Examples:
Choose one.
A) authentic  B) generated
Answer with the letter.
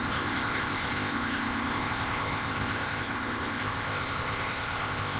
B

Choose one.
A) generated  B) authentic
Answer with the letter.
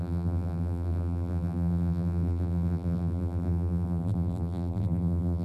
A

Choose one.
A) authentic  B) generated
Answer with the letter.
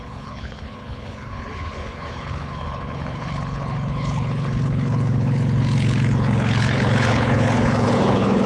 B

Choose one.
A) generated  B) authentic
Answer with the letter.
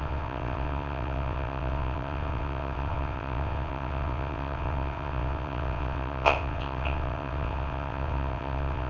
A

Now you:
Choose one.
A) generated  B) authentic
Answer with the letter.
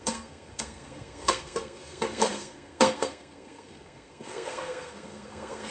A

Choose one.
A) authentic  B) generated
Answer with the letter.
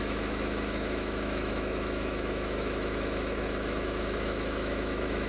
B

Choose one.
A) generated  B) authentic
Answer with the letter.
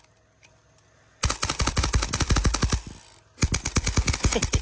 B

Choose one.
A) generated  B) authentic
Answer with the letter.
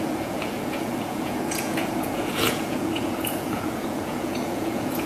A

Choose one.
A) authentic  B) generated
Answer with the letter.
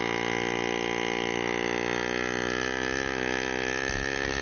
A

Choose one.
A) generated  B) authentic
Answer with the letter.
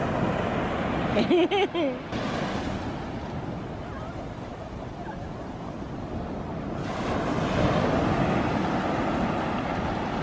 B